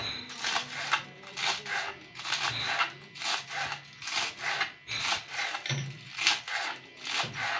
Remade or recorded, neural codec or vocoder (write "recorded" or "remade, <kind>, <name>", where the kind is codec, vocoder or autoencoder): recorded